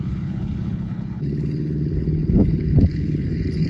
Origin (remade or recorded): remade